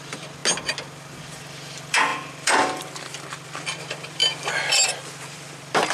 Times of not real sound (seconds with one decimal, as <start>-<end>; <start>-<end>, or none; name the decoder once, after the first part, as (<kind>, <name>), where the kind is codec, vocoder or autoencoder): 0.0-0.4 (vocoder, BigVGAN v2); 1.2-4.2; 5.0-5.9